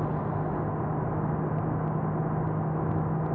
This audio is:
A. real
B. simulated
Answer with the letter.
A